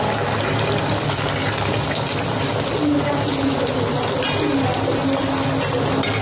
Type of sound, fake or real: real